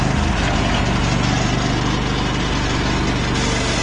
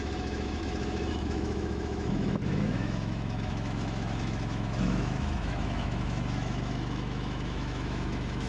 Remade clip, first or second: second